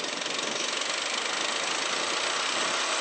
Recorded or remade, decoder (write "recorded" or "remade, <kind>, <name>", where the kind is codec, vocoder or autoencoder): recorded